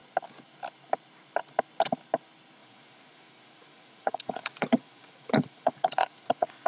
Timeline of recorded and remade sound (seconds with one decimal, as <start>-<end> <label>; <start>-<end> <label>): 0.0-2.6 recorded; 2.6-6.7 remade